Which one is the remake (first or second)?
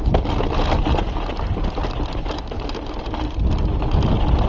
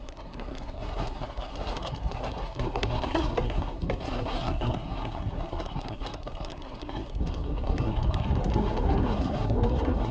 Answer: second